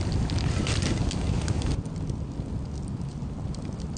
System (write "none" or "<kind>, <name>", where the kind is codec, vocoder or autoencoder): none